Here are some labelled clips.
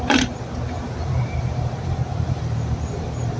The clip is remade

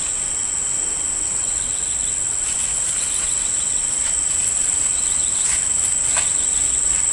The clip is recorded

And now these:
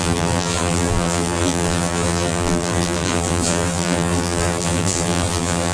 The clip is remade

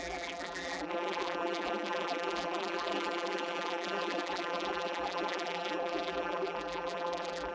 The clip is remade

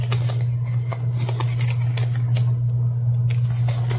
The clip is recorded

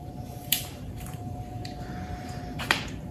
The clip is remade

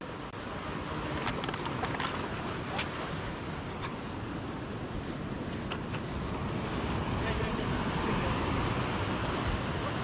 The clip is recorded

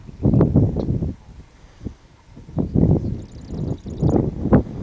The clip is recorded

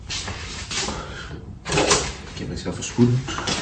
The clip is remade